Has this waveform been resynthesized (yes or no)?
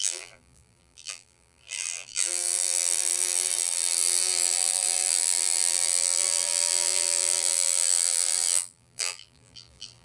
yes